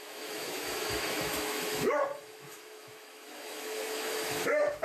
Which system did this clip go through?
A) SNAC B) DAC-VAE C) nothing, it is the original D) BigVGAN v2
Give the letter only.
B